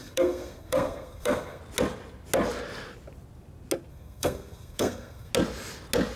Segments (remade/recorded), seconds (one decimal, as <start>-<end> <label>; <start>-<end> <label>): 0.0-1.6 remade; 1.6-3.9 recorded; 3.9-5.3 remade; 5.3-6.2 recorded